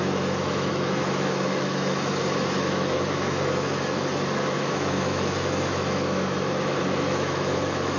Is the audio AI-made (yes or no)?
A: yes